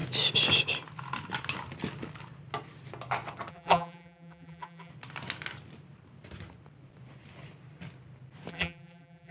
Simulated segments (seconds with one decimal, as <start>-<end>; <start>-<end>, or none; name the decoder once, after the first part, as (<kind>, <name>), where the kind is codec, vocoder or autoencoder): 3.5-4.9 (vocoder, BigVGAN v2); 8.5-9.3